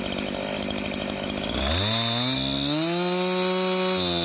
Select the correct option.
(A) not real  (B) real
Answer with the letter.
B